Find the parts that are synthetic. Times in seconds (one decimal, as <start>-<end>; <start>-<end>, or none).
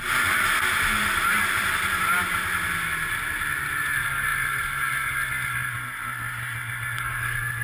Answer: none